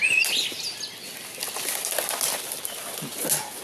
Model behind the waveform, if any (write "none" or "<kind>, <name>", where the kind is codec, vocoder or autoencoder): none